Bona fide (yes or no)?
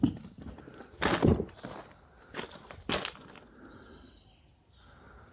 yes